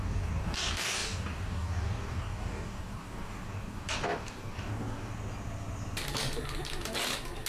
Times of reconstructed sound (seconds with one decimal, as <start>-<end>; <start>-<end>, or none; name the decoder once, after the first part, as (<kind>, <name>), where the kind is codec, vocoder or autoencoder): 0.0-5.1 (codec, DAC)